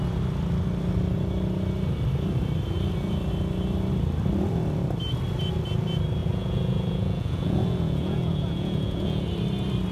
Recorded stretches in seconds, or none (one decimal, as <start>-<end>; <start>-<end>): 0.0-6.2; 9.2-9.9